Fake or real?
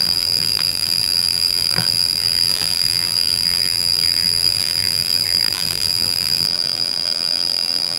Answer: fake